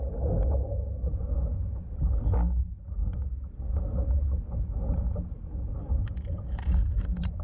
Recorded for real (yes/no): yes